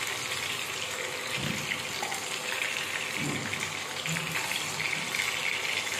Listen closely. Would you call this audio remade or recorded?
recorded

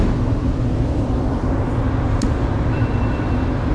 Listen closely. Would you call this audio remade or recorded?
recorded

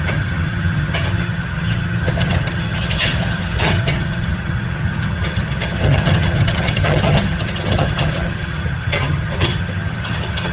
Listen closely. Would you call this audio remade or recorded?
remade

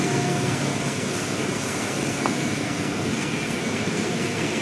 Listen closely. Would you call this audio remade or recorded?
remade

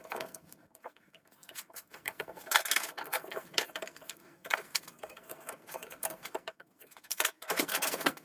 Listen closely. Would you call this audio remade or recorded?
remade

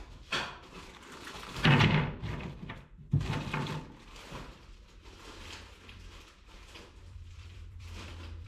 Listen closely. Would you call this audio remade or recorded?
remade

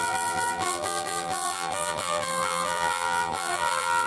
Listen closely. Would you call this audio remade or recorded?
remade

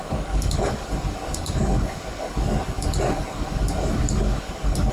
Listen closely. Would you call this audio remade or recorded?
remade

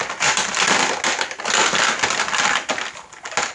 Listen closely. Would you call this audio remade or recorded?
recorded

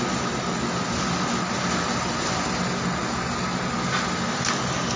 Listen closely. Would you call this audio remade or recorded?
recorded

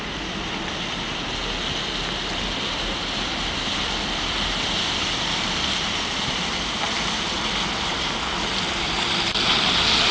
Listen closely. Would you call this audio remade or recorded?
recorded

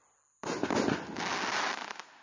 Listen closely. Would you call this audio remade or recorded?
recorded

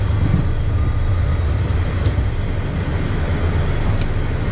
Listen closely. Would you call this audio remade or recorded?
recorded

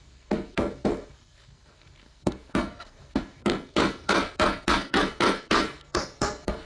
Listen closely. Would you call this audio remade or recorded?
remade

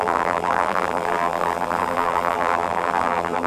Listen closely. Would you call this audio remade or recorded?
remade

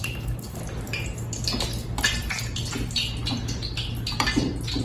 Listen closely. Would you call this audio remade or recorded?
recorded